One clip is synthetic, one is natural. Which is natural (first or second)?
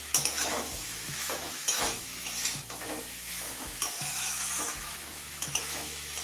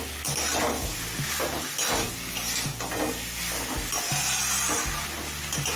second